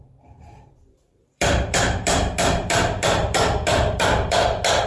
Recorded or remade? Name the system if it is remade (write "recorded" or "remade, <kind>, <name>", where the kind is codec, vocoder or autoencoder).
remade, vocoder, BigVGAN v2